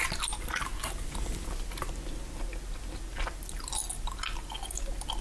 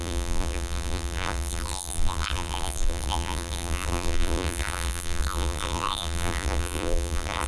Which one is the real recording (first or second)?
first